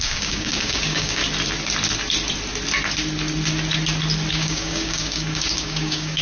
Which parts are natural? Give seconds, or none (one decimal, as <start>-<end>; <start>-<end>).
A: 1.2-4.3